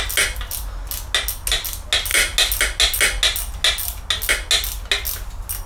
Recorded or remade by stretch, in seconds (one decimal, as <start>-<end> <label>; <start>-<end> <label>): 0.0-5.7 recorded